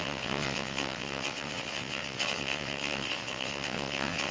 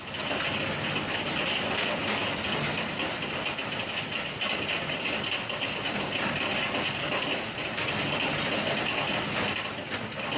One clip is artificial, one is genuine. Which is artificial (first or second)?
first